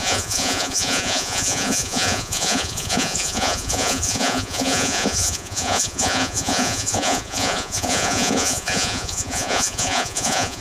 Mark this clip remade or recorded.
remade